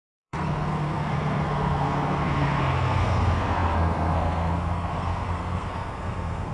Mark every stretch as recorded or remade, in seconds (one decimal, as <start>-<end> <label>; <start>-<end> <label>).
0.0-6.5 remade

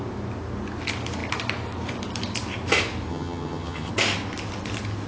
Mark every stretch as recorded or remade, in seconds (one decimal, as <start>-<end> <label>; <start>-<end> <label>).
0.0-3.1 recorded; 3.1-3.9 remade; 3.9-5.1 recorded

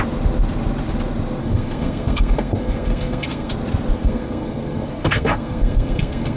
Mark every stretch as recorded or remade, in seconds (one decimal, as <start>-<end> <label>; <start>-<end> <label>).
0.0-1.4 recorded; 1.4-3.5 remade; 3.5-3.9 recorded; 3.9-6.4 remade

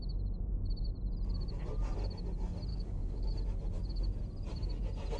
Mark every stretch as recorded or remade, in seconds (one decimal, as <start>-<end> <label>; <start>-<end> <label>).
0.0-2.7 recorded; 2.7-3.3 remade; 3.3-5.2 recorded